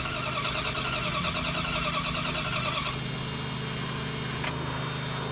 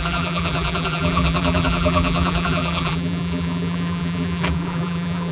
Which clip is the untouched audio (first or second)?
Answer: first